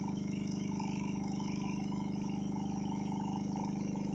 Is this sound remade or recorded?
remade